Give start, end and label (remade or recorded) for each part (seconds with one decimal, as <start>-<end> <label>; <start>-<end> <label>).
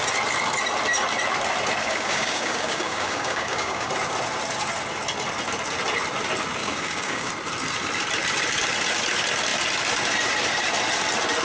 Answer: 0.0-1.8 recorded; 1.8-3.9 remade; 3.9-6.6 recorded; 6.6-7.3 remade; 7.3-11.4 recorded